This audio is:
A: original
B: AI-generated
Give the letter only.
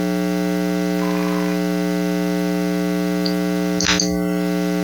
A